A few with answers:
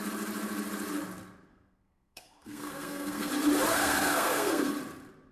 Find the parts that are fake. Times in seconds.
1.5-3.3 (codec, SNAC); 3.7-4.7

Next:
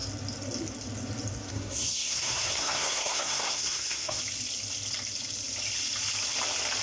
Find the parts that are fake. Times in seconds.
1.5-4.2 (codec, SNAC)

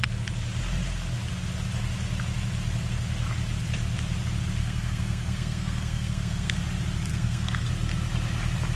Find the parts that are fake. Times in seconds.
4.6-6.6 (codec, SNAC); 7.1-7.7

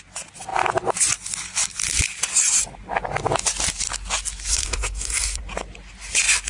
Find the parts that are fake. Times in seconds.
4.5-5.4 (codec, SNAC)